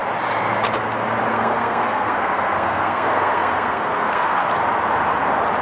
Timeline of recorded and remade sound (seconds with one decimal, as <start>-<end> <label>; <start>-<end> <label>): 0.0-1.3 recorded; 1.3-4.4 remade; 4.4-5.6 recorded